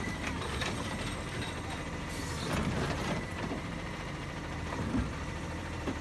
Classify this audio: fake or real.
fake